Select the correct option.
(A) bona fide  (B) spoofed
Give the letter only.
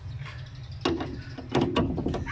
A